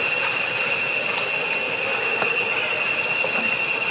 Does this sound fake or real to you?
real